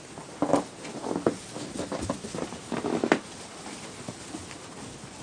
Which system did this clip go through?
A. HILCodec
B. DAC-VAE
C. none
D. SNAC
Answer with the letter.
C